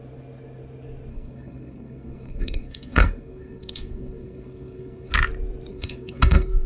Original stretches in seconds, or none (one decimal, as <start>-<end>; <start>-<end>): 0.0-1.1; 5.1-5.7